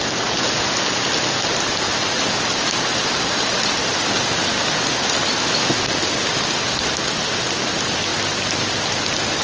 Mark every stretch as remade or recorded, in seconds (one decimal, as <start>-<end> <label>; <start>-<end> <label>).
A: 0.0-9.4 recorded